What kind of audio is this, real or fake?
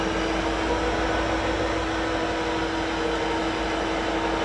real